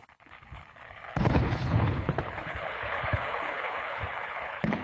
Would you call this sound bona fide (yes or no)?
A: no